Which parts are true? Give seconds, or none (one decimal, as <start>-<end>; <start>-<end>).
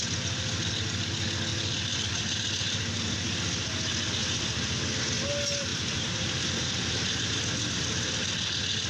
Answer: 0.0-1.5; 3.0-4.2; 4.8-5.7; 7.4-8.9